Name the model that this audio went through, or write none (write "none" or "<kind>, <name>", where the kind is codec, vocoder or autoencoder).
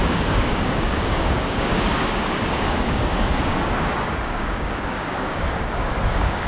codec, DAC